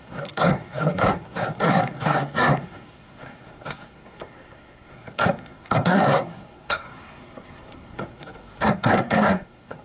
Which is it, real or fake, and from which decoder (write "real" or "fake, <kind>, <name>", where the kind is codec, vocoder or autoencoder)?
fake, codec, SNAC